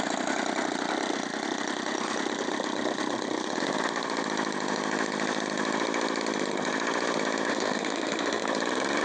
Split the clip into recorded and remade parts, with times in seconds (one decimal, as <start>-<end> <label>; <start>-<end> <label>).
0.0-7.5 recorded; 7.5-8.4 remade; 8.4-9.0 recorded